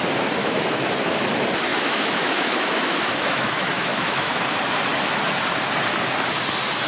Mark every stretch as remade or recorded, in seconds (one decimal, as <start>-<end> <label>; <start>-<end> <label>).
0.0-0.4 recorded; 0.4-0.9 remade; 0.9-1.7 recorded; 1.7-4.4 remade; 4.4-6.9 recorded